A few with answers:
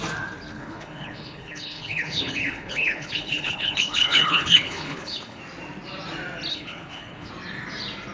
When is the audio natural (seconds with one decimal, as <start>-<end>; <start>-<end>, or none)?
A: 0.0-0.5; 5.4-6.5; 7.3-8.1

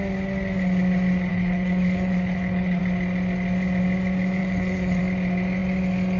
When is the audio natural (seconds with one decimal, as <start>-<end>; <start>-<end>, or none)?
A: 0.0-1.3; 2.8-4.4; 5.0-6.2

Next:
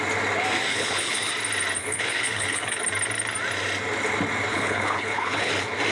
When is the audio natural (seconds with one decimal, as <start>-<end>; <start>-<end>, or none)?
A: 0.0-0.7; 1.3-1.8; 2.8-4.5; 5.5-5.9

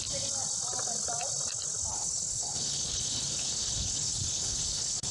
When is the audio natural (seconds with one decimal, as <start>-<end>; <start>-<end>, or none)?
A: 0.0-1.9

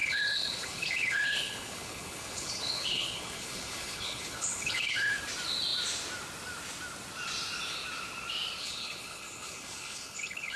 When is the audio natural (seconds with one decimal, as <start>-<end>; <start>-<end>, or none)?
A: 5.2-8.6